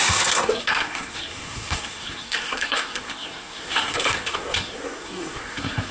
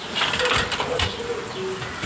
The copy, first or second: first